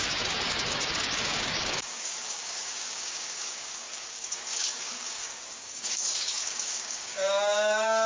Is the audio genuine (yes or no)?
no